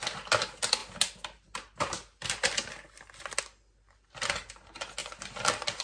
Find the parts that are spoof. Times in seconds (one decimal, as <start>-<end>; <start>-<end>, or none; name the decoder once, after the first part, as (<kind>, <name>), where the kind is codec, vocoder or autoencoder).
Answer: none